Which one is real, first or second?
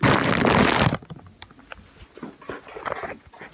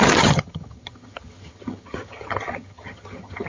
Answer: first